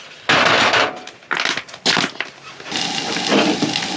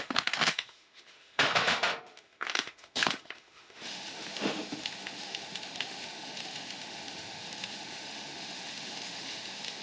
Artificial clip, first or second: second